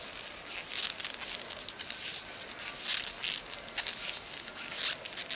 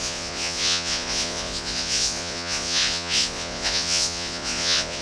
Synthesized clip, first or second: second